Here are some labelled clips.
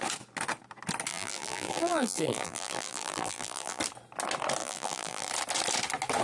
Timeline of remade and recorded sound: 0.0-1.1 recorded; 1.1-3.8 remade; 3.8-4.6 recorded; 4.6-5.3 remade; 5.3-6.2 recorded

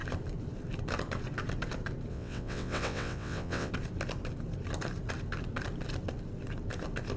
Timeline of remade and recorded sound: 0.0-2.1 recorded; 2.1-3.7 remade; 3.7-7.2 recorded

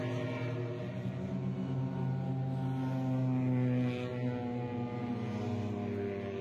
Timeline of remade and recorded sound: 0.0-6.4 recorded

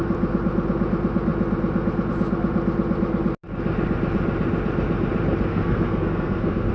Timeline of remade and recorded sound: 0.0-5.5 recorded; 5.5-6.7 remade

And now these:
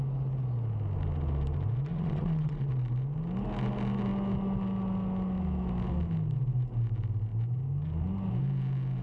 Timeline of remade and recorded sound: 0.0-1.9 recorded; 1.9-2.7 remade; 2.7-9.0 recorded

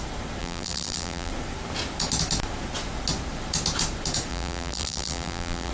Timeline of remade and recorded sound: 0.0-0.4 recorded; 0.4-1.3 remade; 1.3-4.3 recorded; 4.3-5.7 remade